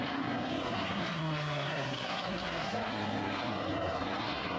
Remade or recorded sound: remade